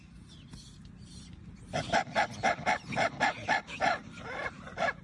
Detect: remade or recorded recorded